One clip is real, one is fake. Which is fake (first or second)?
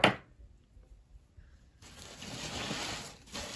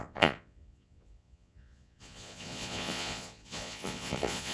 second